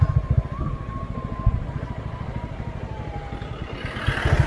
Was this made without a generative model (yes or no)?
yes